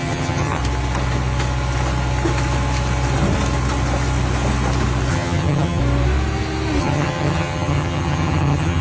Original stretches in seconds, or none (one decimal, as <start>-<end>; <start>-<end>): 0.6-5.1; 5.8-6.8